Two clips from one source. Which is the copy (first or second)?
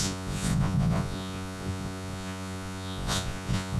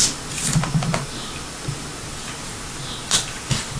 first